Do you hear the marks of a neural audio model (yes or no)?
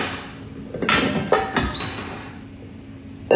no